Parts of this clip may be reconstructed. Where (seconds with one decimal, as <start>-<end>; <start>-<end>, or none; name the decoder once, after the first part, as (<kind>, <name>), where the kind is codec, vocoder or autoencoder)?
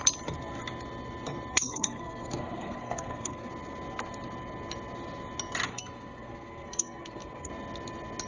1.5-3.5 (codec, SNAC); 5.7-7.5